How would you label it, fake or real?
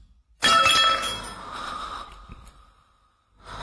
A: real